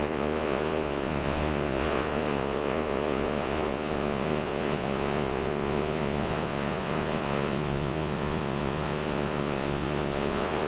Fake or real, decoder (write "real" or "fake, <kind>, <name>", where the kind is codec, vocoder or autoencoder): fake, vocoder, Vocos